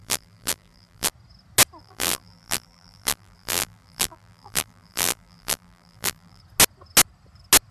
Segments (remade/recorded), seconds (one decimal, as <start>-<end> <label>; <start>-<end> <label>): 0.0-1.1 remade; 1.1-1.8 recorded; 1.8-6.4 remade; 6.4-7.7 recorded